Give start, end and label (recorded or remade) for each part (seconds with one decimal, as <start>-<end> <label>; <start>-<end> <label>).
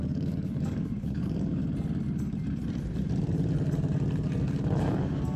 0.0-1.6 remade; 1.6-4.8 recorded; 4.8-5.4 remade